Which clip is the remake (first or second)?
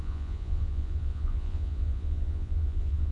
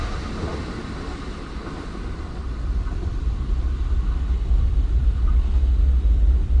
first